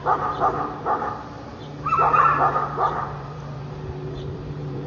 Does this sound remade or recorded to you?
remade